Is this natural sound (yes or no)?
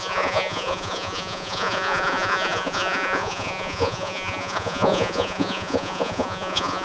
no